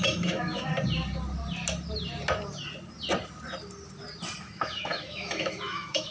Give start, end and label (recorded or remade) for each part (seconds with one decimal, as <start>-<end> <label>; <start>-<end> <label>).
0.0-0.7 remade; 0.7-4.4 recorded; 4.4-6.1 remade